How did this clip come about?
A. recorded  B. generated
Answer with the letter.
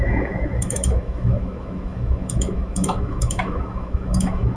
B